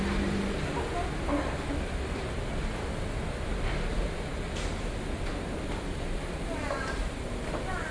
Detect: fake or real real